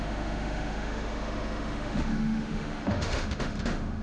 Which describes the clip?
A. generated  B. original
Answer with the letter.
A